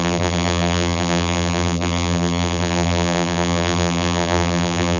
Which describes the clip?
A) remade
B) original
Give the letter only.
A